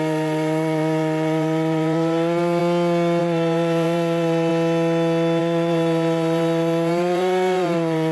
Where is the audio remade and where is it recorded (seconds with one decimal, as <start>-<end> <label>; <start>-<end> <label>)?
0.0-2.6 remade; 2.6-3.2 recorded; 3.2-4.5 remade; 4.5-5.4 recorded; 5.4-8.1 remade